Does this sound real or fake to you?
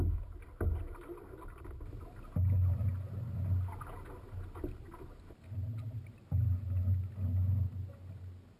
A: real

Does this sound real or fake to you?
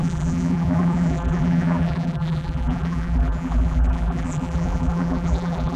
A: fake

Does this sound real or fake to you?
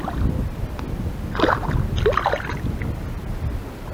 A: real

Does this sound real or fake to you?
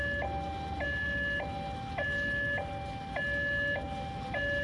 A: real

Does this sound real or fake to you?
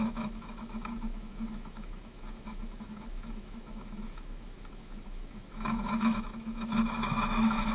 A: fake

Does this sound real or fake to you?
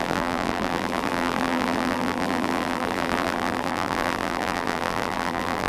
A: fake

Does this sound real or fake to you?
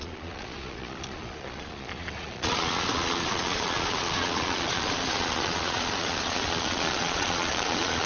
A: fake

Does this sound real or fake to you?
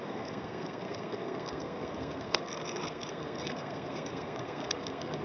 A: fake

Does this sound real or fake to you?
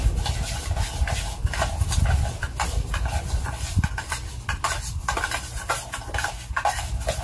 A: real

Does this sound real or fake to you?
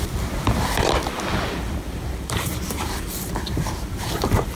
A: fake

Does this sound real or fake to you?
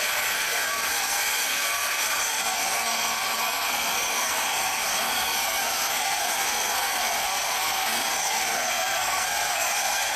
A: fake